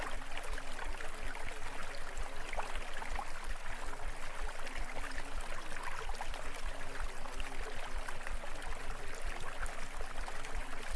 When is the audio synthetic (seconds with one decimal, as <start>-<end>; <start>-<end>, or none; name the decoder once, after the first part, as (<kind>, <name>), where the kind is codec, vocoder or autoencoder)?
none

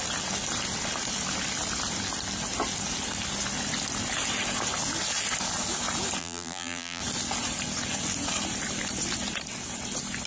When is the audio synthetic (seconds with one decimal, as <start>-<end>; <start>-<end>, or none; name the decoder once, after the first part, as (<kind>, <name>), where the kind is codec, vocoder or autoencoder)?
6.2-7.0 (vocoder, BigVGAN v2)

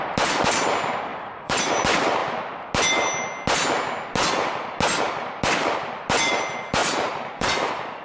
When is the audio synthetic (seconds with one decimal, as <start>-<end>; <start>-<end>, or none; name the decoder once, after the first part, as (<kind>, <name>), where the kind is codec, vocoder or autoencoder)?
1.1-1.7 (vocoder, BigVGAN v2); 6.8-7.5

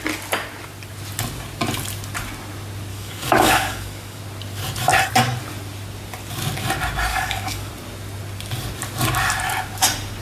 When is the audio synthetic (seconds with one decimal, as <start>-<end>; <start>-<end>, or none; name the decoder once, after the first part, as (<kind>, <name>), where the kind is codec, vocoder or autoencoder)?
2.9-4.2 (codec, DAC); 7.1-7.7

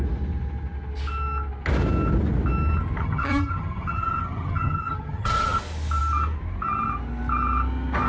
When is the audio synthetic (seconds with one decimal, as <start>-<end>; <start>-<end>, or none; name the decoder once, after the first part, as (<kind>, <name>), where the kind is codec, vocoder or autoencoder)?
3.0-5.6 (vocoder, HiFi-GAN)

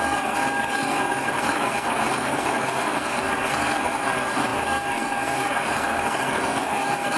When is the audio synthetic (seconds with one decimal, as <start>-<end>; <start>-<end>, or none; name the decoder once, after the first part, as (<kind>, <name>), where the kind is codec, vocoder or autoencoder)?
0.0-7.2 (codec, SNAC)